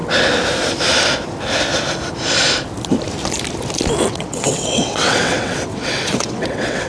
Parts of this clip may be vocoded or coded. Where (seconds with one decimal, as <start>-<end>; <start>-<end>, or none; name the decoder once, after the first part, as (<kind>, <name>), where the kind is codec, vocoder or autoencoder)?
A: 4.1-6.9 (vocoder, WaveNeXt)